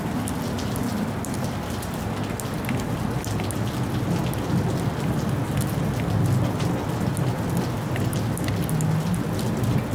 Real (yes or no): yes